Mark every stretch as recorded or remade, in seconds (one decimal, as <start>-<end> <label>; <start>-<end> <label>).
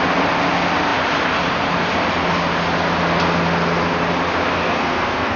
0.0-4.6 recorded; 4.6-5.4 remade